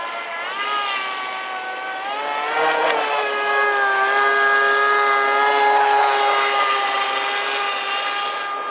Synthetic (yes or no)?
no